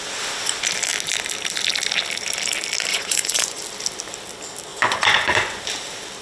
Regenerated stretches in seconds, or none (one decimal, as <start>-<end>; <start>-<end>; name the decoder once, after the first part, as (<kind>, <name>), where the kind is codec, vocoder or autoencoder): 2.9-3.6 (vocoder, Vocos); 4.7-5.6

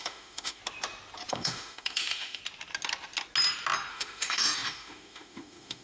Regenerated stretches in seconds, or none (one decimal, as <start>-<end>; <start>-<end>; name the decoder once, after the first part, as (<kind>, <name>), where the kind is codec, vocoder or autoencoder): 0.0-0.6 (autoencoder, DAC-VAE); 1.3-2.4; 3.9-5.8